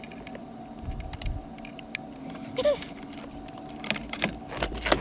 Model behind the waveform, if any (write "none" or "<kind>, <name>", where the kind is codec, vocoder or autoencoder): none